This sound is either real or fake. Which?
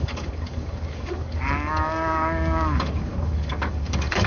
fake